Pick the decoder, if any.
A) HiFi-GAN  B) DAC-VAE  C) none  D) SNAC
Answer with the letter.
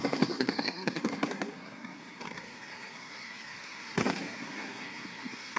D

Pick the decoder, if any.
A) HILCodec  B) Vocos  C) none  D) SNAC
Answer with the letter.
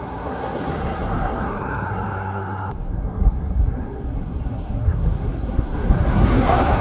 D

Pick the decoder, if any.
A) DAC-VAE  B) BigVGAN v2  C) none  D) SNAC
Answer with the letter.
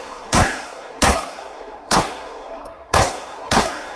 D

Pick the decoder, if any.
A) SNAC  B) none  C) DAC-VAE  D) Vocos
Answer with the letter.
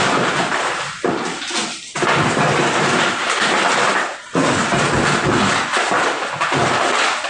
B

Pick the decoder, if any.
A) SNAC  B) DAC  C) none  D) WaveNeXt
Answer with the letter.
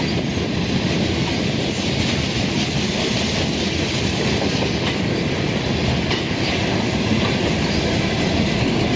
C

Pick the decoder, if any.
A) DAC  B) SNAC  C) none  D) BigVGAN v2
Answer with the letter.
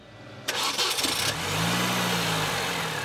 C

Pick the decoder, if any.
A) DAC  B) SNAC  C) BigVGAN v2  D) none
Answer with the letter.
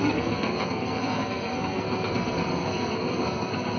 B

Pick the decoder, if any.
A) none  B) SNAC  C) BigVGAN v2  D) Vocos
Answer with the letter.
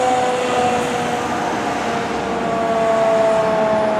A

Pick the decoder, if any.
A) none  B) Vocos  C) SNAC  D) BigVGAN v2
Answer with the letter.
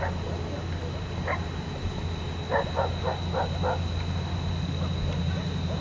A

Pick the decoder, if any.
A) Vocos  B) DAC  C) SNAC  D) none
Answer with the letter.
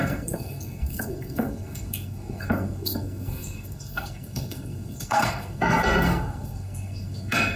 C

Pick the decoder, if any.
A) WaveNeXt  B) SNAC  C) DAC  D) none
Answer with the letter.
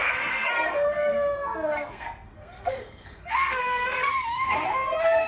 B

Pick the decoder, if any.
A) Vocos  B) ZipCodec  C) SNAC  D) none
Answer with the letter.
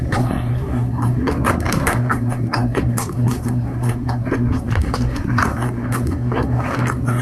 C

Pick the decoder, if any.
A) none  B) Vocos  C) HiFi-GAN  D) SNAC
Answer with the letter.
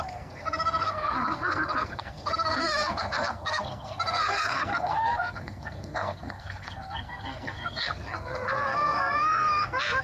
D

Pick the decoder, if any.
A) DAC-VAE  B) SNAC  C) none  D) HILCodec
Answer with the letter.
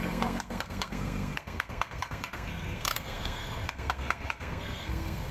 B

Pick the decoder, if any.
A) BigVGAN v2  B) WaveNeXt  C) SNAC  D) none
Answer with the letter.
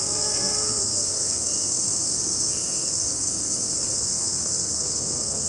C